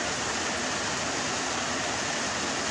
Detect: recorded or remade recorded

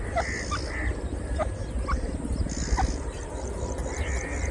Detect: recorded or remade recorded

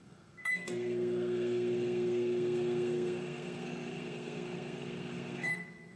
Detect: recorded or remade remade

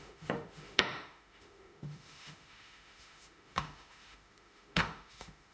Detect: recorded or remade remade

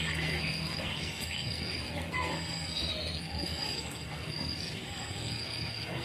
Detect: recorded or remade remade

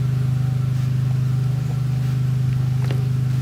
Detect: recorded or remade recorded